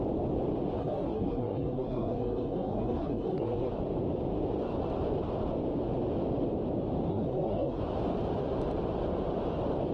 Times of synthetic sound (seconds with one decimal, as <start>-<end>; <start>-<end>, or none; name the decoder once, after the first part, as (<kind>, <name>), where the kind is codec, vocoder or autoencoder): 0.8-3.7 (codec, SNAC); 7.1-7.8